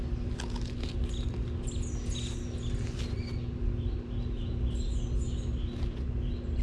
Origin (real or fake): real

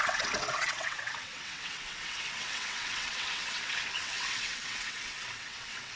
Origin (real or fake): fake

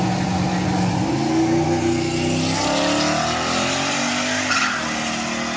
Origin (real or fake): real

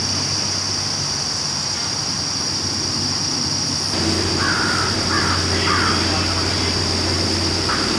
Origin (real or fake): real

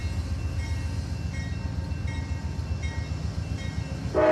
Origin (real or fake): real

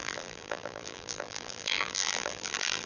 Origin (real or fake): fake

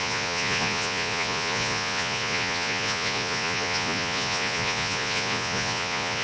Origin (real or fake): fake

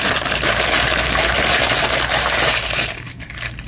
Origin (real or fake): fake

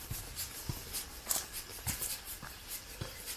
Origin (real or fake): real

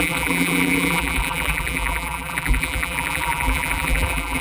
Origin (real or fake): fake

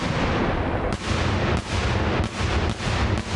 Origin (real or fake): real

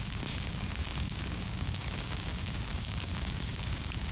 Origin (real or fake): fake